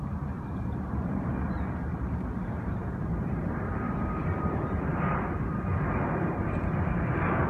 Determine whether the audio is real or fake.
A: fake